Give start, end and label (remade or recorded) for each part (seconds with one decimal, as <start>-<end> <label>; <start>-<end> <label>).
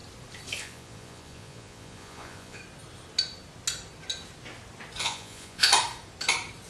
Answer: 0.0-0.6 recorded; 0.6-2.6 remade; 2.6-5.0 recorded; 5.0-5.7 remade; 5.7-6.7 recorded